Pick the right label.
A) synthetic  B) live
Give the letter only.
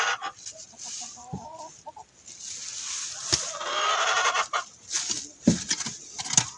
B